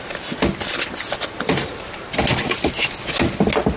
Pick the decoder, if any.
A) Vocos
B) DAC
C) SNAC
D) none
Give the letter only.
D